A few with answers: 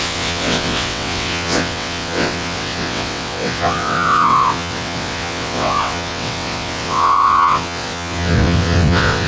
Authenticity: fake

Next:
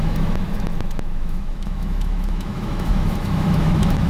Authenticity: fake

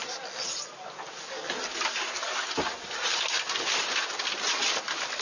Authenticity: real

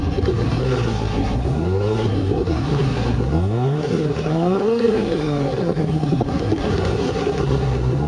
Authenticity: fake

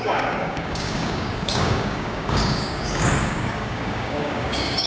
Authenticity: fake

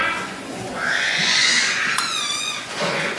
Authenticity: fake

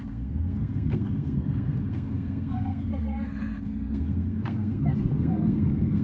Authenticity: fake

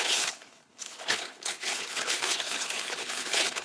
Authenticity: fake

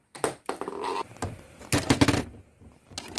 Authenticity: real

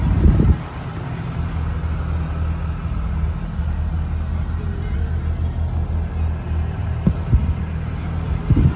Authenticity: real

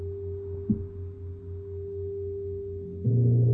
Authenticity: real